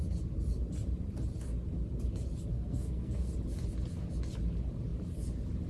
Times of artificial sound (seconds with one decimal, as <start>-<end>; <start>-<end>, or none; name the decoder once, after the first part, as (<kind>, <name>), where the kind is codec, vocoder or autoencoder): 2.5-3.3 (codec, SNAC)